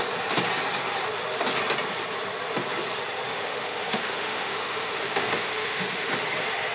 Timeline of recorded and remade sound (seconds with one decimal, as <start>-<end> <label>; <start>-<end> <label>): 0.0-3.3 recorded; 3.3-6.1 remade; 6.1-6.7 recorded